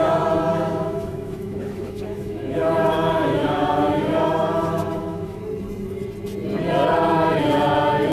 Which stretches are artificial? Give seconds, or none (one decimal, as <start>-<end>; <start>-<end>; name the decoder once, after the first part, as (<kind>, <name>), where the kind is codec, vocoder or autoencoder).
0.5-5.4 (autoencoder, DAC-VAE)